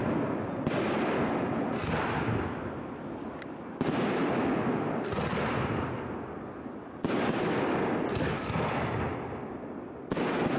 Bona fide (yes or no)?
yes